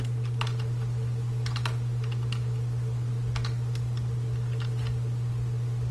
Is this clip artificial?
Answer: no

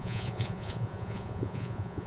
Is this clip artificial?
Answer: yes